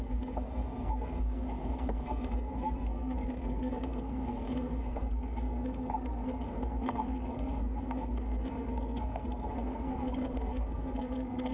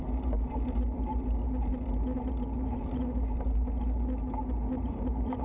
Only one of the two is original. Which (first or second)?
second